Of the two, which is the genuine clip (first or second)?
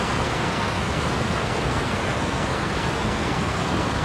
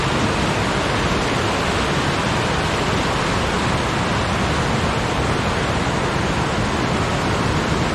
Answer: second